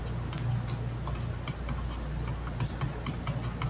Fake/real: real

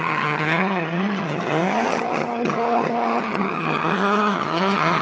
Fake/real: fake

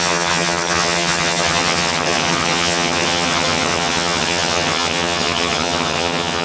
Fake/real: fake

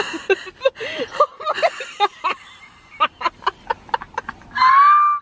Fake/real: real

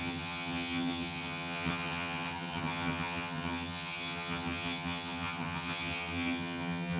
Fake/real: fake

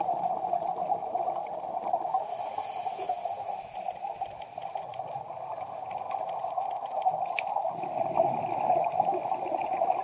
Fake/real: real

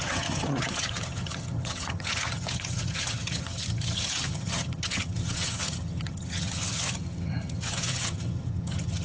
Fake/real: fake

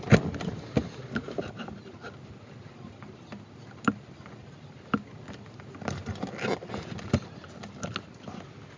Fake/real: real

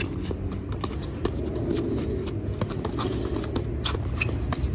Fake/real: real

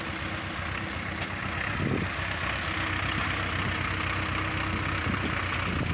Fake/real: real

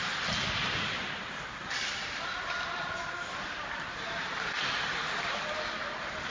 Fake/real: real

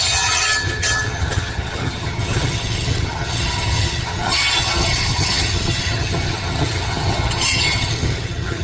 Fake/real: fake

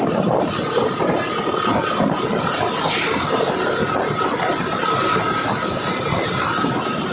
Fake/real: real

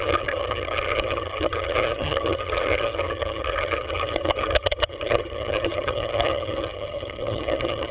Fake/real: fake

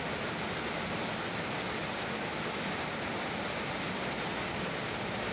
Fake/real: real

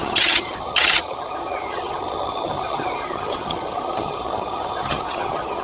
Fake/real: fake